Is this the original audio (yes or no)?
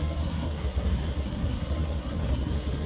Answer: no